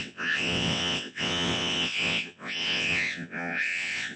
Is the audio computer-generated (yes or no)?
yes